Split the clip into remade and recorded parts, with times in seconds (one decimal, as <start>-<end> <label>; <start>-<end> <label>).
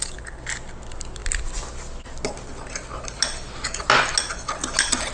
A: 0.0-5.1 recorded